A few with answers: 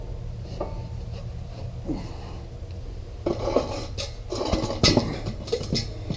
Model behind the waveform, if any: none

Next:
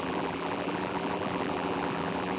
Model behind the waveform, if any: vocoder, BigVGAN v2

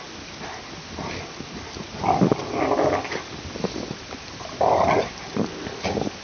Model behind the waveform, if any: none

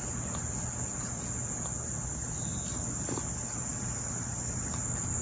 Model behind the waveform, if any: none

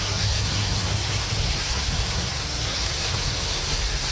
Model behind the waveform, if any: codec, SNAC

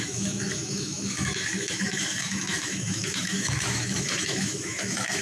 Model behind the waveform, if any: autoencoder, DAC-VAE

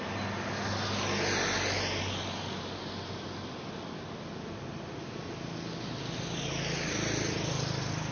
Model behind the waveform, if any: none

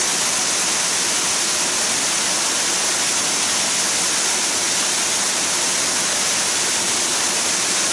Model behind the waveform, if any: none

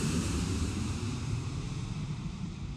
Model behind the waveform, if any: vocoder, BigVGAN v2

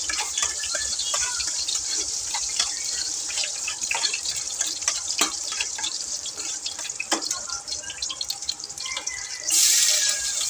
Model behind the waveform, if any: vocoder, BigVGAN v2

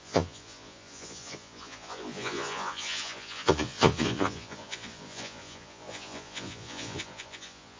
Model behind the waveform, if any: vocoder, Vocos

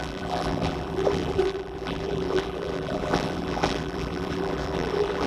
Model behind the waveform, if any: vocoder, BigVGAN v2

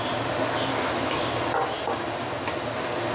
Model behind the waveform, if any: none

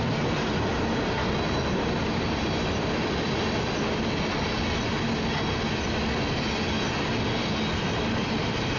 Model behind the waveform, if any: none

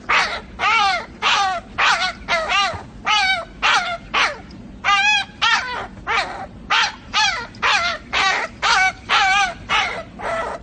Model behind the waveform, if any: vocoder, BigVGAN v2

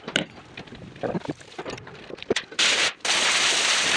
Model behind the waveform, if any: vocoder, BigVGAN v2